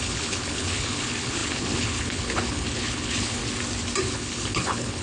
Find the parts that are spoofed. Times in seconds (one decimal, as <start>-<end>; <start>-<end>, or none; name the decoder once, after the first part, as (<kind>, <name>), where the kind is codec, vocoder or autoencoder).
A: 0.0-3.4 (codec, HILCodec); 4.0-5.0